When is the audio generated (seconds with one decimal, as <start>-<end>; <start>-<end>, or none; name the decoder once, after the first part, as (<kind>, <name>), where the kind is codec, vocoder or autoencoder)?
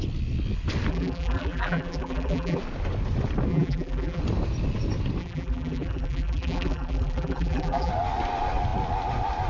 0.9-2.6 (vocoder, BigVGAN v2); 3.5-4.2; 5.2-7.9